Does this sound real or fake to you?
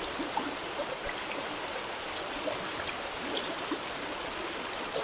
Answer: real